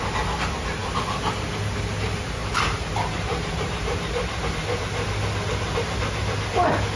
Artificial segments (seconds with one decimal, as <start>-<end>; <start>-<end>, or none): 2.4-4.5